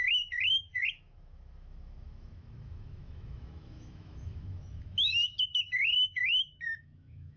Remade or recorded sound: remade